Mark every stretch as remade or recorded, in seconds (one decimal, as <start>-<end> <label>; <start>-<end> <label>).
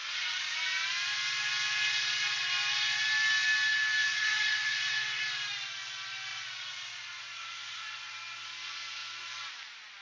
0.0-0.6 remade; 0.6-4.0 recorded; 4.0-5.2 remade; 5.2-6.3 recorded; 6.3-8.1 remade; 8.1-10.0 recorded